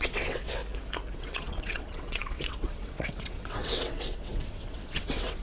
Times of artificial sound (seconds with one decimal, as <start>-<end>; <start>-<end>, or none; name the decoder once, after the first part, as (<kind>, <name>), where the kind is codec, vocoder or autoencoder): 0.0-0.6 (vocoder, WaveNeXt); 1.2-5.4